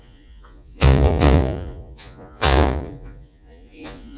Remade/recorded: remade